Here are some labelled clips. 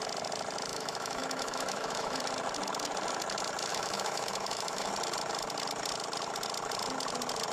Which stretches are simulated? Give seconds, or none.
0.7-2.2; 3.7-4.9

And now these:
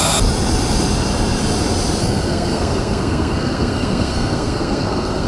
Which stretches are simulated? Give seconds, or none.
2.0-5.3

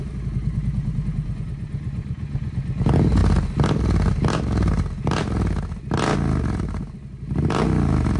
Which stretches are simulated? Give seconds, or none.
0.4-2.5

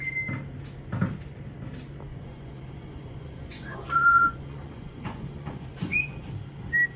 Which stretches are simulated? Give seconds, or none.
2.1-6.3

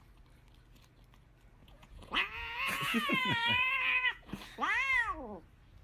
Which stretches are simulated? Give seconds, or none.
1.6-4.3